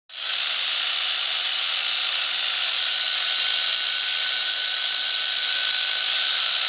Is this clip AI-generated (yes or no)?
no